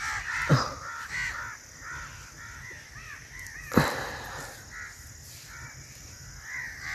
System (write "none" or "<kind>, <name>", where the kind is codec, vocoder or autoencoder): none